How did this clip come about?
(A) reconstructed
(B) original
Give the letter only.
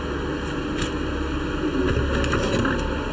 B